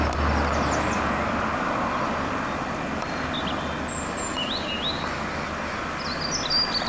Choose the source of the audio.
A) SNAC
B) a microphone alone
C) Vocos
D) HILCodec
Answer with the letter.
B